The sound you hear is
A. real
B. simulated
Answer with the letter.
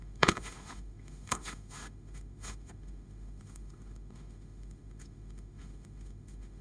B